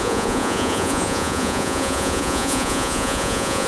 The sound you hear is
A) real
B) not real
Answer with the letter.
B